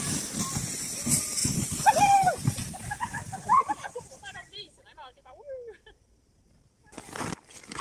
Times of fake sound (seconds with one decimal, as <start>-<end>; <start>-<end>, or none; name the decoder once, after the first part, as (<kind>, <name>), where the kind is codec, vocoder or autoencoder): 1.4-4.7 (vocoder, BigVGAN v2)